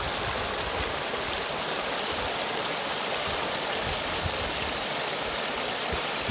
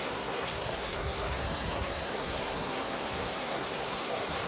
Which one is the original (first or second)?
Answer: first